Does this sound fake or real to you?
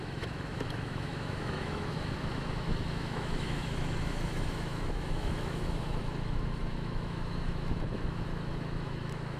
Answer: fake